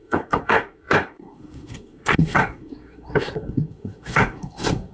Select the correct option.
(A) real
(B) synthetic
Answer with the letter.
B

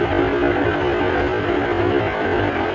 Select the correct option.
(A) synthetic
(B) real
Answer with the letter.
B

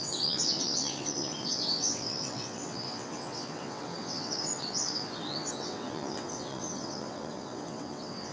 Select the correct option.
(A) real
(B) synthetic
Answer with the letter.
B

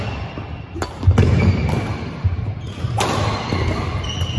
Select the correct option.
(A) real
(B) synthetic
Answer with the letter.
A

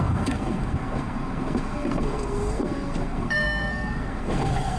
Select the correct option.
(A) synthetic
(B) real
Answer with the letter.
A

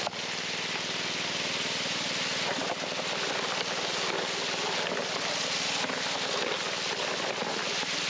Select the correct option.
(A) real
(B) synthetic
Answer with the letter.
A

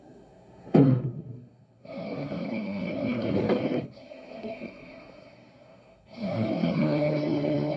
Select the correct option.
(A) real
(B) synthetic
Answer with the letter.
B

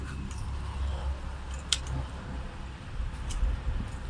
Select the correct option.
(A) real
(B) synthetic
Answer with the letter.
B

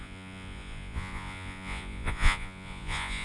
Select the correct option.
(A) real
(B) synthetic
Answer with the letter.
B